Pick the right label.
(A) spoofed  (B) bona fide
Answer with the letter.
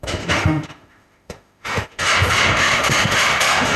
A